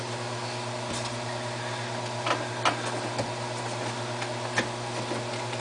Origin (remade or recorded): recorded